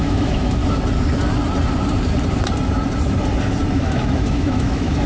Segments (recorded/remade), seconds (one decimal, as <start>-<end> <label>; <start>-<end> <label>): 0.0-0.6 remade; 0.6-3.7 recorded; 3.7-5.1 remade